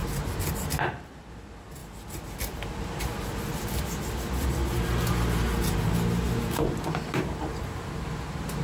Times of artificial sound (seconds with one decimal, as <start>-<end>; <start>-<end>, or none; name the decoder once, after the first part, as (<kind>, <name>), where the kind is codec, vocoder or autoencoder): none